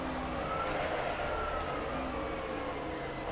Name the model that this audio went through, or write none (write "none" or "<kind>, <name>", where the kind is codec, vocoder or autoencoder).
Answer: none